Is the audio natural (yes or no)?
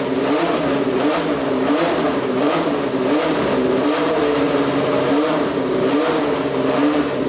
no